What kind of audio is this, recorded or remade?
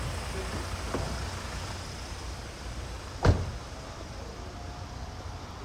recorded